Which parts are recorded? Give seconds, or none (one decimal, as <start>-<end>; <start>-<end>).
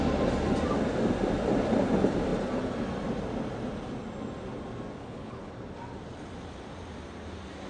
0.0-5.0; 5.5-7.7